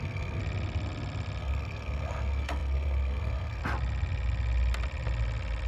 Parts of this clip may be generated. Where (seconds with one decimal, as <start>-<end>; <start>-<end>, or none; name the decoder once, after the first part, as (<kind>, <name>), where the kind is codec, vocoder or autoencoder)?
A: 0.0-0.4 (codec, SNAC); 1.4-3.6